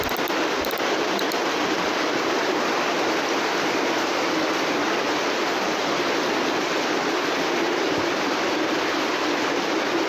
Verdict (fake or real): real